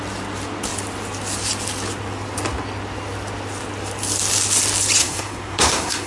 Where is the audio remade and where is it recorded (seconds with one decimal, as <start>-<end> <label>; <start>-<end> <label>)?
0.0-5.0 recorded; 5.0-6.1 remade